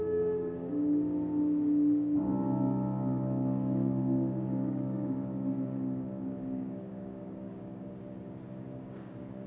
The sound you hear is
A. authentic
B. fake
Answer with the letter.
B